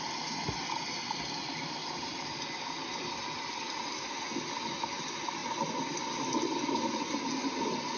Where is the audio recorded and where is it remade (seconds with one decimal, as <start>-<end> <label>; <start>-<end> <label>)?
0.0-8.0 recorded